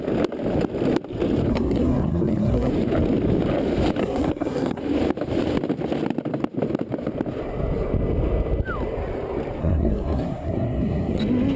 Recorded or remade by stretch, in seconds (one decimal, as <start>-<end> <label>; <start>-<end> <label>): 0.0-1.5 recorded; 1.5-2.7 remade; 2.7-4.0 recorded; 4.0-4.8 remade; 4.8-9.6 recorded; 9.6-11.2 remade; 11.2-11.6 recorded

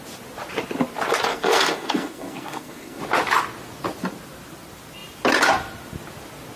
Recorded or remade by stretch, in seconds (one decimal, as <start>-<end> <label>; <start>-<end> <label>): 0.0-1.3 recorded; 1.3-3.0 remade; 3.0-6.6 recorded

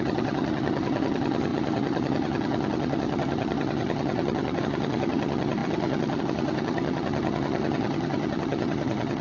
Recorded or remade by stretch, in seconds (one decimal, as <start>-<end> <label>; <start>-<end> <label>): 0.0-9.2 remade

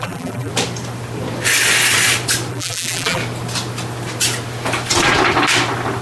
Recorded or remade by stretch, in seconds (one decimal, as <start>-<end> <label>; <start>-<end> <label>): 0.0-0.5 remade; 0.5-2.5 recorded; 2.5-3.2 remade; 3.2-6.0 recorded

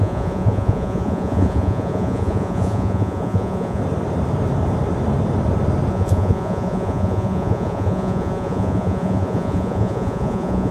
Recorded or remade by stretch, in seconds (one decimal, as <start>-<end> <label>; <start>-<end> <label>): 0.0-3.8 remade; 3.8-5.9 recorded; 5.9-10.7 remade

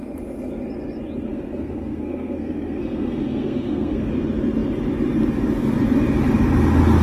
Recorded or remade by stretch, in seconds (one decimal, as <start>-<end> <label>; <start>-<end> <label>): 0.0-1.3 recorded; 1.3-4.1 remade; 4.1-7.0 recorded

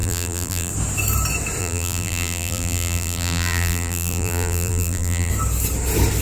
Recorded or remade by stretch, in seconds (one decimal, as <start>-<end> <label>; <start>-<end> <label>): 0.0-0.7 remade; 0.7-1.6 recorded; 1.6-5.3 remade; 5.3-6.2 recorded